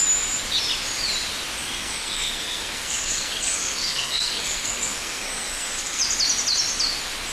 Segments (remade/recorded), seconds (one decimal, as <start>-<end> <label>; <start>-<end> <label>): 0.0-1.6 recorded; 1.6-6.0 remade; 6.0-7.3 recorded